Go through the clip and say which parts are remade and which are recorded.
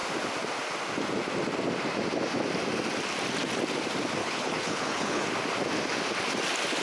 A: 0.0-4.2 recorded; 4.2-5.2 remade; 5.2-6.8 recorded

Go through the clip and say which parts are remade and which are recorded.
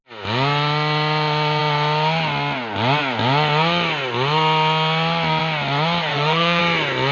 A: 0.0-6.1 recorded; 6.1-6.6 remade; 6.6-7.1 recorded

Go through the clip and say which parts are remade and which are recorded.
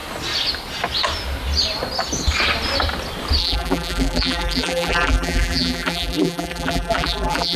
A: 0.0-3.4 recorded; 3.4-7.6 remade